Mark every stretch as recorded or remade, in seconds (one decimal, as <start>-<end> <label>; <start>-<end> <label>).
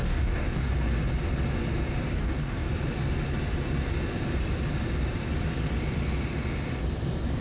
0.0-0.7 remade; 0.7-2.2 recorded; 2.2-2.7 remade; 2.7-7.4 recorded